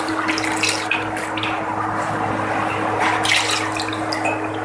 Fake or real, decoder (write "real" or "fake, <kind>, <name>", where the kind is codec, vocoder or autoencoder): real